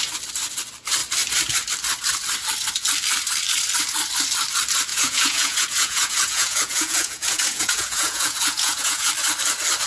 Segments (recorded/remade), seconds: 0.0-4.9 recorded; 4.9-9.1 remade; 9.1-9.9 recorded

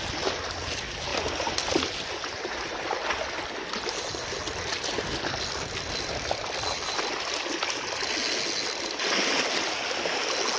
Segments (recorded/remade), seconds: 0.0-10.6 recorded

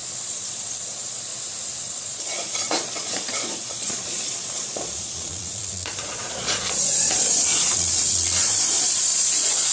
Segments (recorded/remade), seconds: 0.0-1.3 remade; 1.3-1.8 recorded; 1.8-9.7 remade

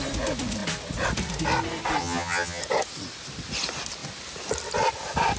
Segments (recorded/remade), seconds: 0.0-2.0 recorded; 2.0-2.6 remade; 2.6-5.4 recorded

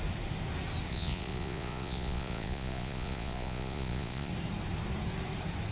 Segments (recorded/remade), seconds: 0.0-0.9 recorded; 0.9-4.3 remade; 4.3-5.7 recorded